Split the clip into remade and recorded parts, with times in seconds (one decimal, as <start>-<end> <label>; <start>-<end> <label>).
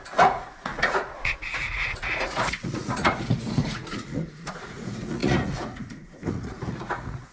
0.0-7.3 remade